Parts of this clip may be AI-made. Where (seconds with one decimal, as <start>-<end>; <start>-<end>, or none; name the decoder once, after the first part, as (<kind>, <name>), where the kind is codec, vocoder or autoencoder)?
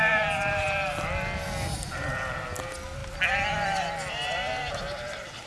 none